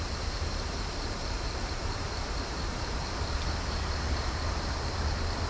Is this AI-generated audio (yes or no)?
yes